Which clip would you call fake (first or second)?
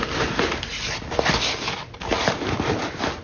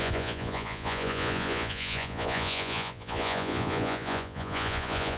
second